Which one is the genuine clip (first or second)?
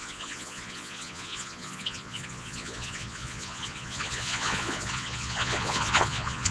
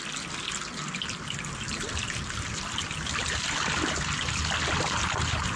second